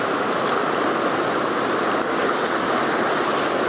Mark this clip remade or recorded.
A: recorded